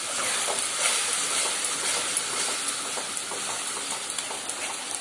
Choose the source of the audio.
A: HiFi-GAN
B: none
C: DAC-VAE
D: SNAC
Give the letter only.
B